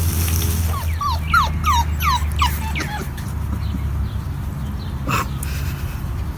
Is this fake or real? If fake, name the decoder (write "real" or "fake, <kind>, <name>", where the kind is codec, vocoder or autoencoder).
real